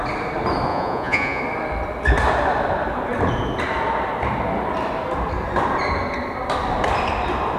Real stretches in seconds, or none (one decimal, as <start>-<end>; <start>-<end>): 0.0-0.7; 1.4-7.6